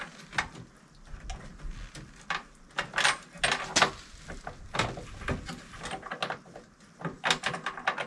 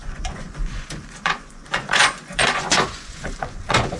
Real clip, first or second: first